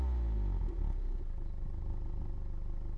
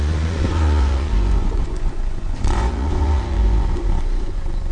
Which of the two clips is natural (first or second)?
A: first